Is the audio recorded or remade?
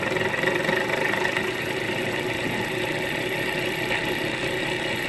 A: recorded